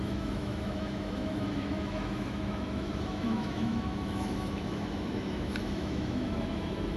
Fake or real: fake